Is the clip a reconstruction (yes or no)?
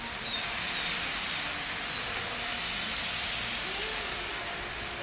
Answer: no